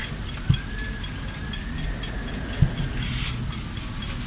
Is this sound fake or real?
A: real